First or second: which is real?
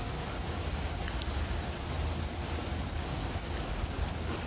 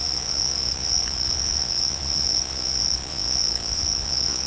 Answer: first